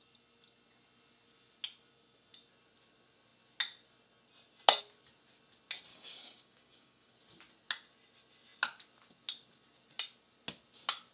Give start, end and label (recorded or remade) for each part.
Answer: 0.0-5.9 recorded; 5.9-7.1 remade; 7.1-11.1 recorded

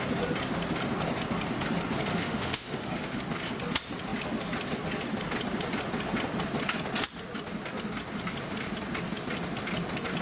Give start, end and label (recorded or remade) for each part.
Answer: 0.0-2.1 recorded; 2.1-3.2 remade; 3.2-10.2 recorded